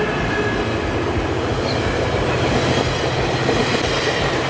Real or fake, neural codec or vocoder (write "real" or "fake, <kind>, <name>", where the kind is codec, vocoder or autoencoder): real